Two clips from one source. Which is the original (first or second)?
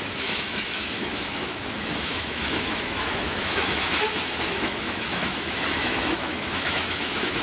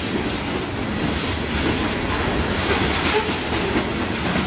second